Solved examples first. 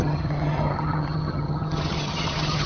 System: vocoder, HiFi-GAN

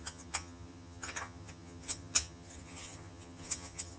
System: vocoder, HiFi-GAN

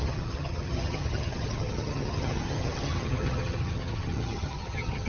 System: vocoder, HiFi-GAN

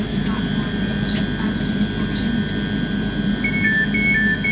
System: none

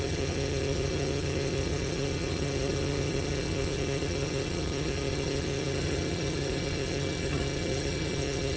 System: vocoder, HiFi-GAN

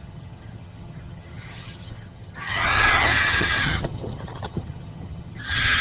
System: vocoder, HiFi-GAN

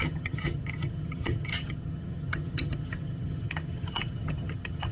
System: vocoder, HiFi-GAN